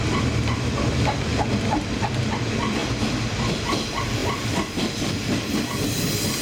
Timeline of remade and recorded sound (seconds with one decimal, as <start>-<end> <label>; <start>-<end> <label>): 0.0-4.2 recorded; 4.2-6.0 remade; 6.0-6.4 recorded